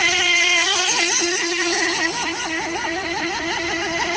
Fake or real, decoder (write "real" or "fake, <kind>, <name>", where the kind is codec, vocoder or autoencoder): fake, vocoder, BigVGAN v2